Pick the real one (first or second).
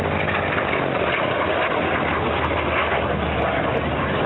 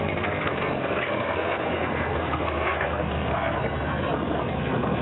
first